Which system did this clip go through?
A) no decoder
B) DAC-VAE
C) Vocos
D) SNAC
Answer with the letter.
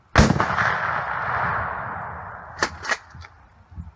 A